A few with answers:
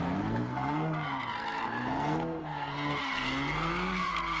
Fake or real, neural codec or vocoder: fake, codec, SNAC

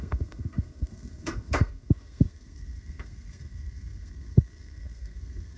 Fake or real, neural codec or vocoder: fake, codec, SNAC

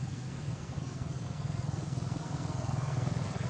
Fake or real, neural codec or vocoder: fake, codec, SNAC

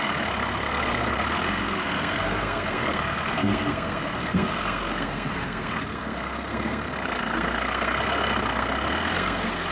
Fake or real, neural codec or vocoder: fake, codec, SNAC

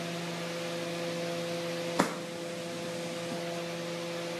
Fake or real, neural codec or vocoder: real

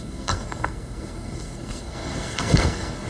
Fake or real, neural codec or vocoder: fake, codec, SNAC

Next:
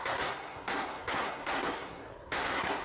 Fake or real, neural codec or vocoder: fake, codec, SNAC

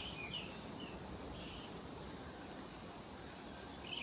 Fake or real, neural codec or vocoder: real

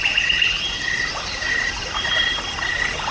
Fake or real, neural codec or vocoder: real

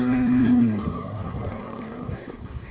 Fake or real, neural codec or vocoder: fake, codec, SNAC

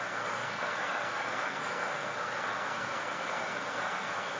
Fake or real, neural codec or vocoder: fake, codec, SNAC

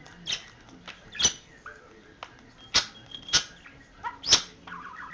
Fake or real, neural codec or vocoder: real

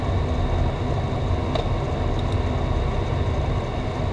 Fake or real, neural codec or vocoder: real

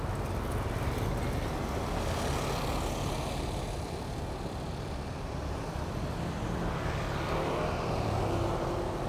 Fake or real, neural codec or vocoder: real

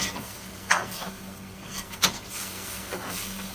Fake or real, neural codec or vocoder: fake, codec, SNAC